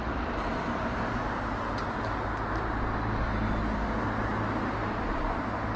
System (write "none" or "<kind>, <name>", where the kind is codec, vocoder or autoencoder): none